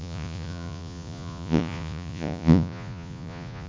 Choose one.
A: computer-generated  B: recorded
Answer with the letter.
A